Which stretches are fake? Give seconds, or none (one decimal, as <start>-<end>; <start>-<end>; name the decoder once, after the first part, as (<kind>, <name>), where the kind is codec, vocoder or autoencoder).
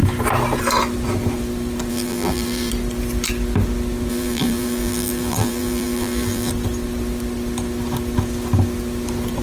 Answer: 1.9-2.7 (vocoder, BigVGAN v2); 4.1-6.5